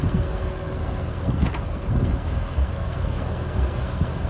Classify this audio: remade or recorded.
remade